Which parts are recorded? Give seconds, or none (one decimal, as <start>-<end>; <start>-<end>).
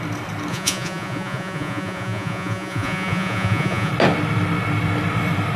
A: 0.0-0.5; 3.9-5.6